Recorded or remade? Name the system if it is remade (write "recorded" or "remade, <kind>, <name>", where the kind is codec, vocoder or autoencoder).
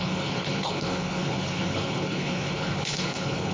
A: remade, codec, HILCodec